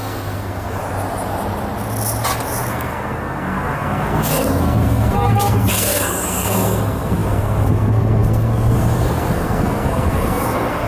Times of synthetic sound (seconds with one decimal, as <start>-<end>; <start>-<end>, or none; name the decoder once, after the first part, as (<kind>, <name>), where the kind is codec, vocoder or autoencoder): 0.0-0.8 (codec, SNAC); 2.7-10.9